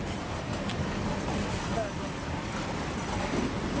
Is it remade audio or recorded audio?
recorded